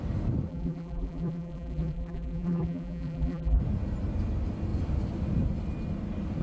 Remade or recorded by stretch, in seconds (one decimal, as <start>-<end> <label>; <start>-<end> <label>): 0.0-0.5 recorded; 0.5-3.6 remade; 3.6-6.4 recorded